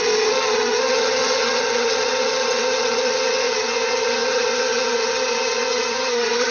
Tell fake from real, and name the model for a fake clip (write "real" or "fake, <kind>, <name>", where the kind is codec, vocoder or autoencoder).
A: fake, vocoder, HiFi-GAN